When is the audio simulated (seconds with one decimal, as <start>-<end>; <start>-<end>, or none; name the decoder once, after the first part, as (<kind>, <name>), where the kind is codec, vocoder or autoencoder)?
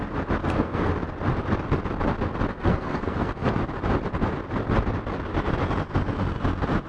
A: 0.4-0.9 (codec, SNAC); 2.5-3.5